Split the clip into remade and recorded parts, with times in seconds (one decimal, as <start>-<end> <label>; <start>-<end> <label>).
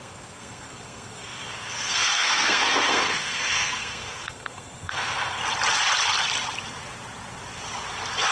0.0-5.4 remade; 5.4-8.3 recorded